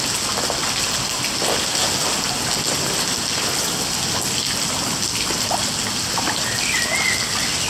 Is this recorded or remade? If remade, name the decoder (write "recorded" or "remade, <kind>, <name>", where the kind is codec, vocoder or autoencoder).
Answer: recorded